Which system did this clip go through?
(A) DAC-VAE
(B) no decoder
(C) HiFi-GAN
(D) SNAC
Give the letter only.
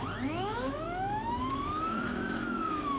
A